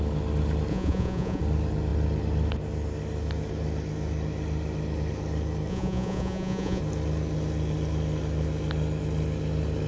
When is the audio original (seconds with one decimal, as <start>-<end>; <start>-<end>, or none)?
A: 0.0-0.7; 1.4-5.7; 6.8-9.9